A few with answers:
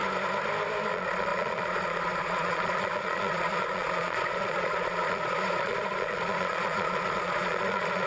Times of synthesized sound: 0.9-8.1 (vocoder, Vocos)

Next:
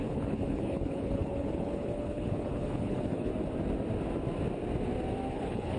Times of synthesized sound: 0.0-3.3 (codec, HILCodec); 5.3-5.8

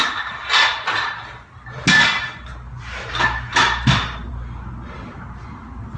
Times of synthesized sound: none

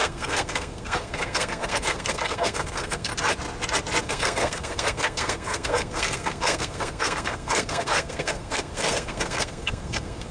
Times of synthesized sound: 0.0-3.1 (codec, SNAC); 4.0-10.3

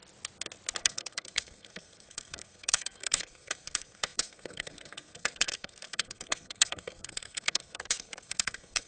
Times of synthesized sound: 0.8-8.9 (codec, SNAC)

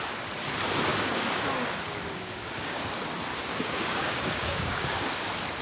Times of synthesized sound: 0.9-2.8 (codec, DAC); 3.3-5.0

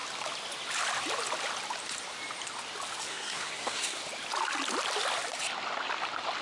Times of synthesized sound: 3.1-4.0 (codec, SNAC)